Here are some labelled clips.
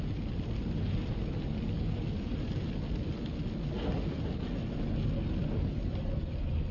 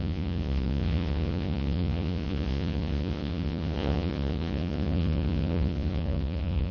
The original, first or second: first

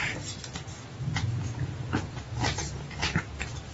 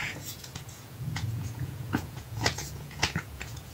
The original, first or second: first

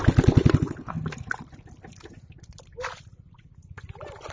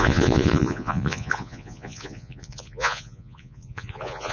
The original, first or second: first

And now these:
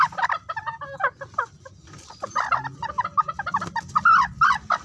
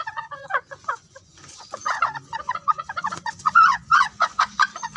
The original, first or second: first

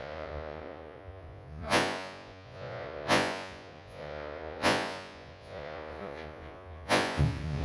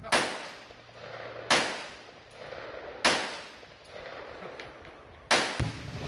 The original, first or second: second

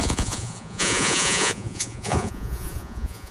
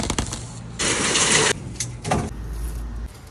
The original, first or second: second